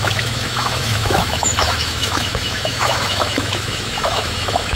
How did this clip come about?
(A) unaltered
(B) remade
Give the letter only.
B